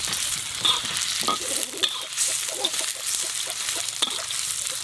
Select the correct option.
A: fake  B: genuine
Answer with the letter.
B